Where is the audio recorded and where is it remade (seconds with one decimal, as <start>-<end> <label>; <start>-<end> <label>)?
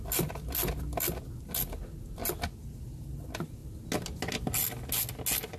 0.0-5.6 recorded